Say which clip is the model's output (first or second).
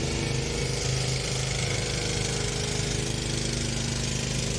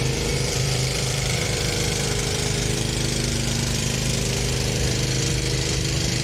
second